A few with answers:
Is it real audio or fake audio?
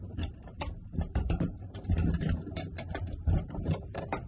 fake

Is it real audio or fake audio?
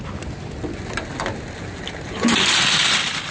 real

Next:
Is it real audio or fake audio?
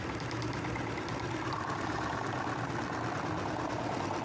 real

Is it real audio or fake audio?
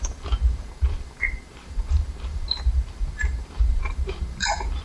fake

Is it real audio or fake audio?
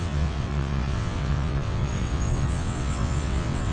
fake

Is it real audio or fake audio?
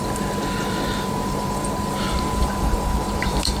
fake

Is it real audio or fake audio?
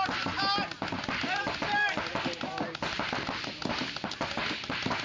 real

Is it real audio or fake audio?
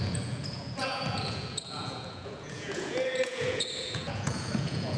fake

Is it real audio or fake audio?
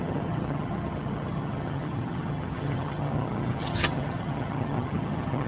fake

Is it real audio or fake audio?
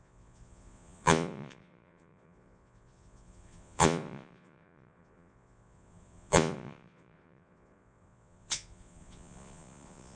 fake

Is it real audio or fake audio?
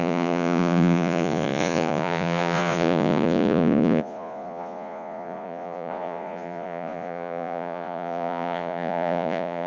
fake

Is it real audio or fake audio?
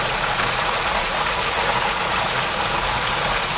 fake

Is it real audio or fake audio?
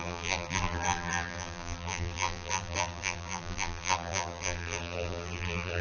fake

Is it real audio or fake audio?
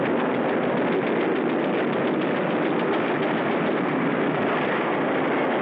real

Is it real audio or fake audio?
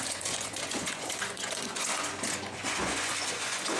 fake